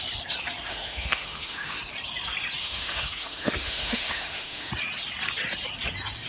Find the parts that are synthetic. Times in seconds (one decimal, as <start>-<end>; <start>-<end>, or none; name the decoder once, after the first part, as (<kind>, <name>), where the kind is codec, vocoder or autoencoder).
0.7-1.8 (autoencoder, DAC-VAE); 2.6-4.7